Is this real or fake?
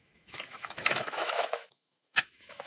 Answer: fake